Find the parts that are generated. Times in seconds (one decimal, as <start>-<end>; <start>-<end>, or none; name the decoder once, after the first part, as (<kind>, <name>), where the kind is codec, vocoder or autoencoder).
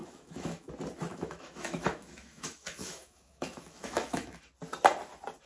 0.0-0.7 (autoencoder, DAC-VAE); 1.1-4.4